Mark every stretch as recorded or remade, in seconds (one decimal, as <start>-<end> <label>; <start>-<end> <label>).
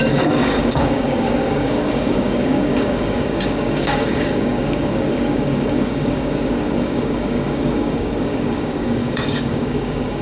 0.0-10.2 remade